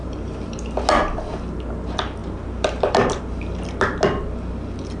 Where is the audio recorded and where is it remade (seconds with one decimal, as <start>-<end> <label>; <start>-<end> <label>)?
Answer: 0.0-0.6 remade; 0.6-2.2 recorded; 2.2-3.2 remade; 3.2-5.0 recorded